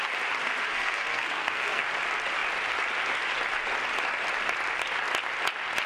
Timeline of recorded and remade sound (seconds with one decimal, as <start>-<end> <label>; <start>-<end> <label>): 0.0-0.6 recorded; 0.6-1.8 remade; 1.8-5.9 recorded